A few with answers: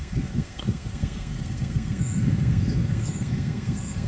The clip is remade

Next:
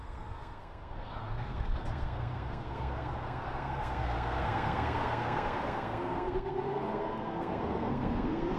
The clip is remade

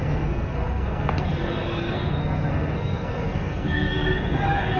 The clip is remade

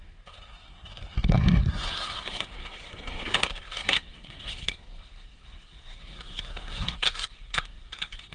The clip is remade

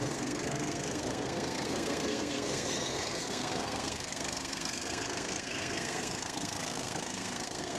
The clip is remade